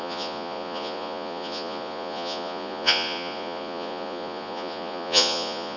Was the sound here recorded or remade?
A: remade